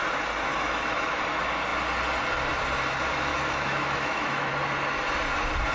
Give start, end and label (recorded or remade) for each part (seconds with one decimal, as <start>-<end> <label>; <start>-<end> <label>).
0.0-0.5 recorded; 0.5-1.2 remade; 1.2-3.3 recorded; 3.3-4.5 remade; 4.5-5.7 recorded